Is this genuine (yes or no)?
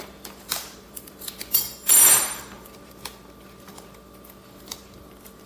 no